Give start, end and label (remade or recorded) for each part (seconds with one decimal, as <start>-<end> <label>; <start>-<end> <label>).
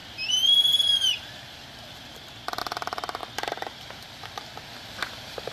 0.0-2.6 recorded; 2.6-3.2 remade; 3.2-5.5 recorded